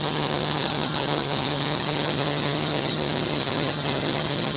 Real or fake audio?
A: fake